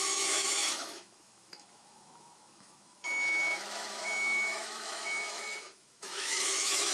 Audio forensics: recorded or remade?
remade